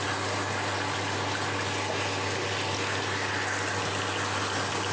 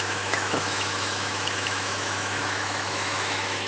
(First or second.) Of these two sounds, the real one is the first